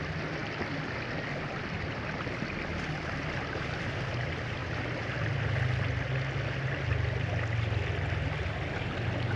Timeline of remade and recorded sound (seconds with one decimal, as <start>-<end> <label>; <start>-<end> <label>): 0.0-0.4 remade; 0.4-1.4 recorded; 1.4-4.6 remade; 4.6-9.4 recorded